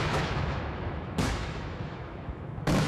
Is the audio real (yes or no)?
no